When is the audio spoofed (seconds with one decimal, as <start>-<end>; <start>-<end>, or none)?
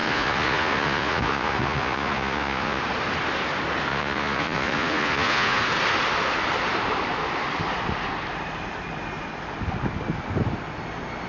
0.0-2.8; 3.9-5.6